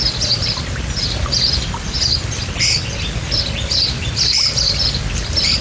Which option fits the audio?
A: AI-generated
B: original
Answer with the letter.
B